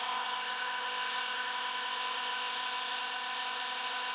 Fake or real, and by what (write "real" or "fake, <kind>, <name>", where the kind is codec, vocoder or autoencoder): fake, codec, ZipCodec